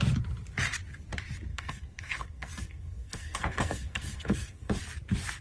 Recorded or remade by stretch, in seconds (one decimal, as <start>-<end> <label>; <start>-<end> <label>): 0.0-1.5 recorded; 1.5-4.7 remade; 4.7-5.4 recorded